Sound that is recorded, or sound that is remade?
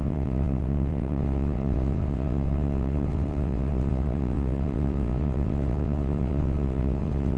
remade